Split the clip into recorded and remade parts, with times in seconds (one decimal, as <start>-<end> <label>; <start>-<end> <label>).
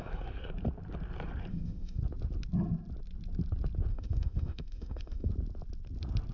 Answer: 0.0-1.5 recorded; 1.5-2.0 remade; 2.0-3.9 recorded; 3.9-5.3 remade; 5.3-6.3 recorded